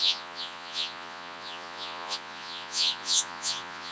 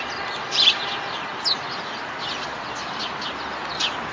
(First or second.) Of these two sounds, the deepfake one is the first